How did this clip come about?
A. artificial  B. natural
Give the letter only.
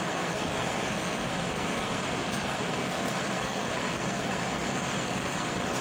A